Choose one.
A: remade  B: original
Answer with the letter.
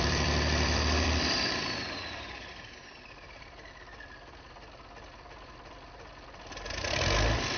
A